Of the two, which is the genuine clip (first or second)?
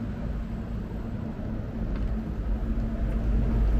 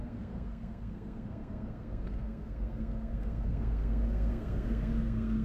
first